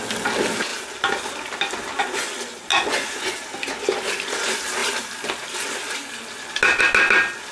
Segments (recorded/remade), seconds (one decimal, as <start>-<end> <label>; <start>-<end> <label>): 0.0-2.7 recorded; 2.7-3.4 remade; 3.4-7.5 recorded